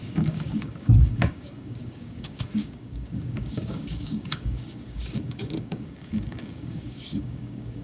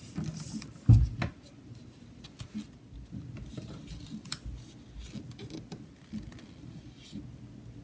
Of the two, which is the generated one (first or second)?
first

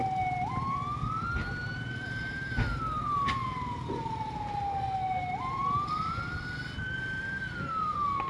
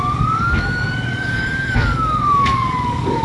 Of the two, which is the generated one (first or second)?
second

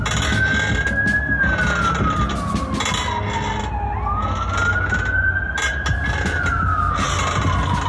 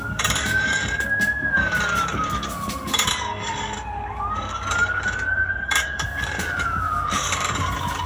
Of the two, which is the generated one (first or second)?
second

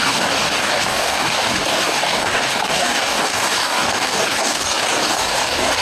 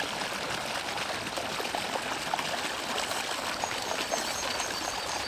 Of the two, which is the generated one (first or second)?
first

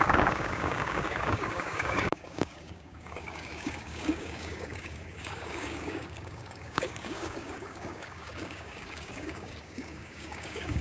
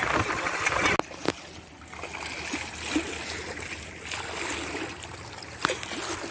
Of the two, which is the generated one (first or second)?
first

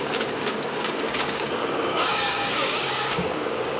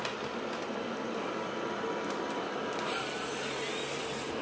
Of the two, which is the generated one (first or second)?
first